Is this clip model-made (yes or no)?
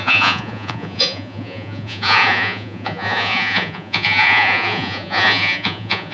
yes